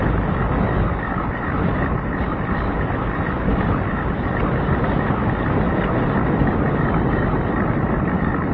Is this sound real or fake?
real